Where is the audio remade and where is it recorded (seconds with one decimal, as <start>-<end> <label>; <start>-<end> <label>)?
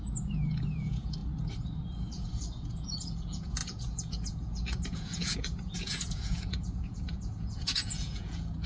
0.0-1.2 remade; 1.2-2.8 recorded; 2.8-8.7 remade